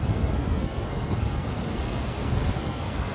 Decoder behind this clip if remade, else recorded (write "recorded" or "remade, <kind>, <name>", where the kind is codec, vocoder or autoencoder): remade, codec, SNAC